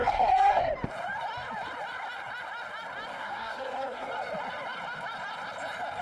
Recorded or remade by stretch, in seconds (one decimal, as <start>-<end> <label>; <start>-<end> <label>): 0.0-0.7 remade; 0.7-3.1 recorded; 3.1-4.1 remade; 4.1-6.0 recorded